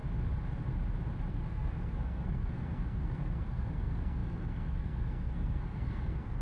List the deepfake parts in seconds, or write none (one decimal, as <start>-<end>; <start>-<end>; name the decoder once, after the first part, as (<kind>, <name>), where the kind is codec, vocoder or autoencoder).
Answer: 1.3-6.4 (codec, SNAC)